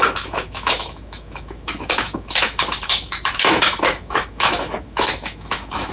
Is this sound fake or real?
fake